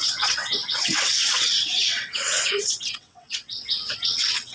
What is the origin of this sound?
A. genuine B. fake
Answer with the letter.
B